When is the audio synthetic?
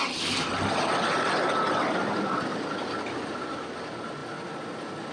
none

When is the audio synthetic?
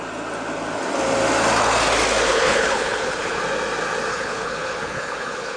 2.3-3.4; 4.1-5.6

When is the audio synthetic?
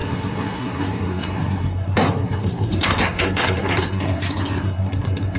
0.0-5.4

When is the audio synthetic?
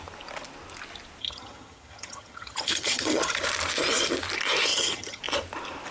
1.2-3.4; 4.7-5.2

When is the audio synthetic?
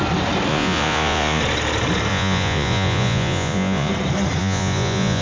0.5-1.4; 2.1-3.9; 4.4-5.2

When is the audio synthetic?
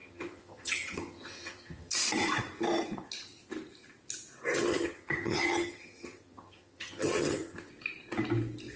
0.0-1.9; 4.7-7.7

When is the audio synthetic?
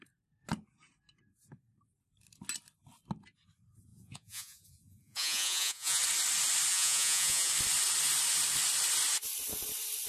3.9-6.0; 6.7-7.5